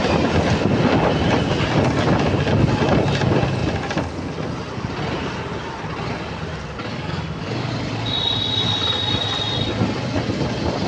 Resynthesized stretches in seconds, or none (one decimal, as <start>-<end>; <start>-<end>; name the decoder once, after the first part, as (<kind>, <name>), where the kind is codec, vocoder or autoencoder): 6.9-7.7 (codec, DAC)